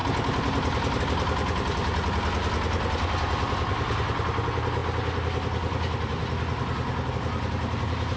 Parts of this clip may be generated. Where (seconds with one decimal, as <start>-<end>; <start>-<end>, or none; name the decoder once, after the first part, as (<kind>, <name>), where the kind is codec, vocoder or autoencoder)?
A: none

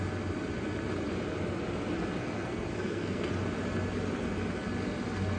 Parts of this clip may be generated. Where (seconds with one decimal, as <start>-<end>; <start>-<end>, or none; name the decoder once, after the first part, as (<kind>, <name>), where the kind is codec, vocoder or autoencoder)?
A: 2.2-3.3 (codec, SNAC)

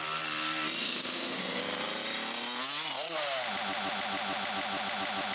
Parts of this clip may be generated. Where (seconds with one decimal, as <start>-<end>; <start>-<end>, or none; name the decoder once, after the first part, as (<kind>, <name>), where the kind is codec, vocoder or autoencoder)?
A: 0.8-1.6 (autoencoder, DAC-VAE)

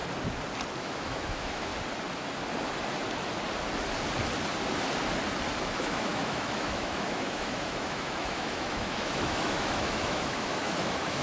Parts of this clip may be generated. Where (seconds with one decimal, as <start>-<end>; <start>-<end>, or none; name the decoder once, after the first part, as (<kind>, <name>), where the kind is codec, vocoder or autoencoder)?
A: 0.8-1.7 (autoencoder, DAC-VAE); 5.6-11.2

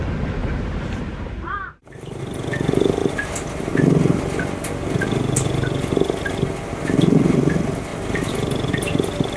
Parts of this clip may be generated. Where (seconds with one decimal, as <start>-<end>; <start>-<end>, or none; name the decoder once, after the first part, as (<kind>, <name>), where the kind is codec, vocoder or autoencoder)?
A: 0.4-2.2 (vocoder, BigVGAN v2)

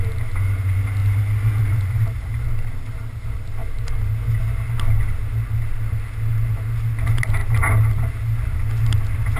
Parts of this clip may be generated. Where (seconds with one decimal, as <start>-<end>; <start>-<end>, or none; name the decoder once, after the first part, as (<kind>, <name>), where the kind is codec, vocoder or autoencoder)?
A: none